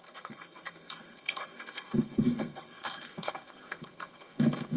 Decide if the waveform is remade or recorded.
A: remade